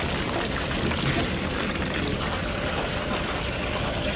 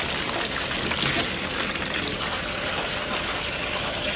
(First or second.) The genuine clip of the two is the second